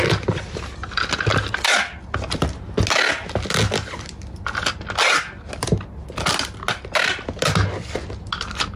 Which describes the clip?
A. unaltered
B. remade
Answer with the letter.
A